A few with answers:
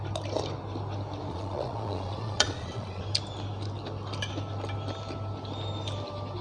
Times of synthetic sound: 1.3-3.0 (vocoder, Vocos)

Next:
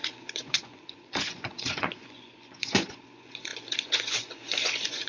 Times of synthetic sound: 0.0-5.1 (vocoder, Vocos)

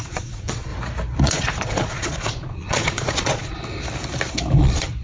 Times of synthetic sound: 0.0-0.7 (vocoder, Vocos); 1.2-3.6; 4.6-5.0